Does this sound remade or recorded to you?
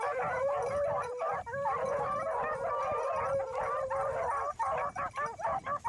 recorded